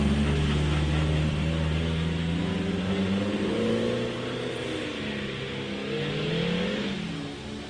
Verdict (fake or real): real